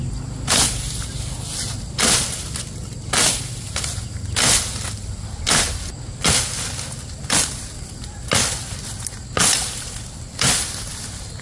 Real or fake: real